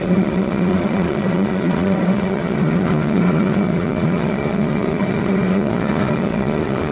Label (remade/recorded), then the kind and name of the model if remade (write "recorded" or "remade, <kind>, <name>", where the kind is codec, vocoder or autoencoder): remade, vocoder, Vocos